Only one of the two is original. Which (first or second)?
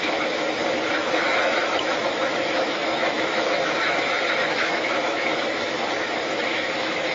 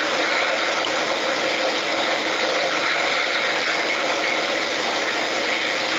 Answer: second